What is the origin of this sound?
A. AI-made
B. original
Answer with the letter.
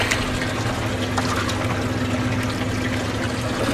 B